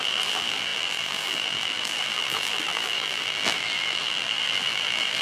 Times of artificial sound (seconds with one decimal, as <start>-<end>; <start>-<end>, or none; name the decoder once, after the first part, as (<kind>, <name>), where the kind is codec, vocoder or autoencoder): 0.0-5.2 (vocoder, BigVGAN v2)

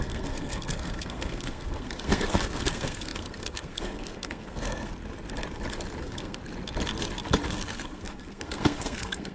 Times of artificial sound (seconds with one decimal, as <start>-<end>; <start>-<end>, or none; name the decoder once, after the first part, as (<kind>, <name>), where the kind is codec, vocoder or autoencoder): 0.0-4.9 (codec, SNAC); 6.0-6.4; 7.5-9.3

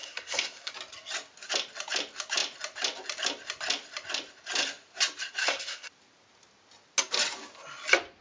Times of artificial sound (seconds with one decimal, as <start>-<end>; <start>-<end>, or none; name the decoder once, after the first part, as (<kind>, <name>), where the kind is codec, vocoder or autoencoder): 0.0-0.7 (codec, SNAC); 5.4-5.9

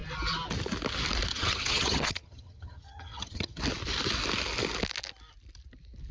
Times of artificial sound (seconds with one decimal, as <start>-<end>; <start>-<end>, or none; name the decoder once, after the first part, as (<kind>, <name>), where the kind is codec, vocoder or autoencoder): 1.3-3.6 (vocoder, HiFi-GAN)